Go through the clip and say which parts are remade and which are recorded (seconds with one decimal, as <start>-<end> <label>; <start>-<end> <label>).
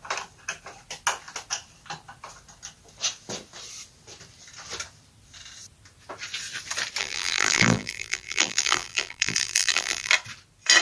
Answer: 0.0-7.0 recorded; 7.0-10.1 remade; 10.1-10.8 recorded